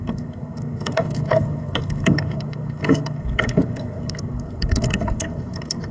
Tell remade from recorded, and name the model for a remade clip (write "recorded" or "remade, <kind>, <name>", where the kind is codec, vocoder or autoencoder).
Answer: remade, codec, SNAC